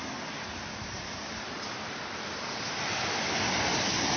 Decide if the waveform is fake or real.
real